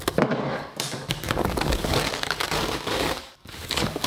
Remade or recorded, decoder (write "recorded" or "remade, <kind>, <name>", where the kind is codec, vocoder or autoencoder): remade, codec, DAC